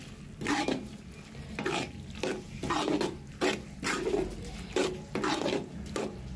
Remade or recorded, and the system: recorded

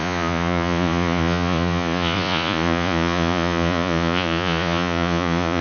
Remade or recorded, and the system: remade, vocoder, Vocos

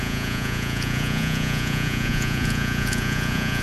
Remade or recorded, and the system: remade, vocoder, Vocos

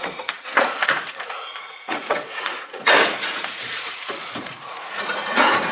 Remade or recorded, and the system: remade, vocoder, Vocos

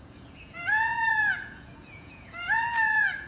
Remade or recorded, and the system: remade, vocoder, Vocos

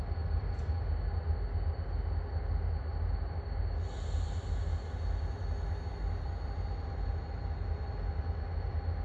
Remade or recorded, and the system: recorded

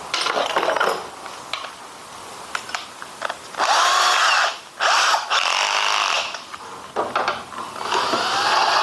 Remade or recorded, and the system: recorded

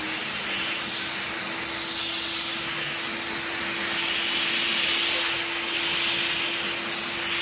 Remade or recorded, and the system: recorded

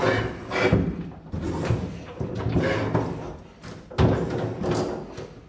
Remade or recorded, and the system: recorded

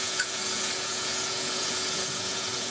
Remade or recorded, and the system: remade, vocoder, Vocos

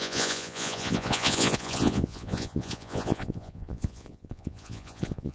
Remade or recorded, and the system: remade, vocoder, Vocos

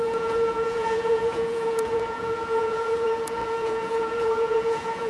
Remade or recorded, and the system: remade, vocoder, Vocos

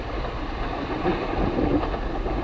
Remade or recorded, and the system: recorded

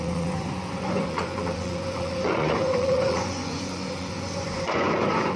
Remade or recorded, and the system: remade, vocoder, Vocos